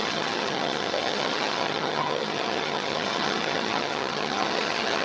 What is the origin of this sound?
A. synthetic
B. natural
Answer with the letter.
A